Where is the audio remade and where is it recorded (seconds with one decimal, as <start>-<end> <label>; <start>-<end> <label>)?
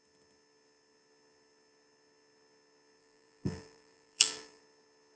0.0-3.0 recorded; 3.0-4.6 remade; 4.6-5.2 recorded